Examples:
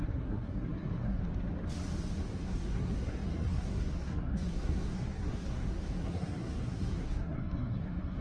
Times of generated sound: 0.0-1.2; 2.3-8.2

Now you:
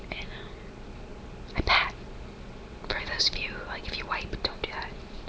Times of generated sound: none

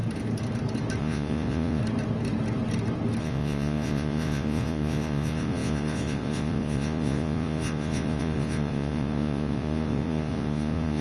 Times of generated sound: 1.0-1.8; 3.2-11.0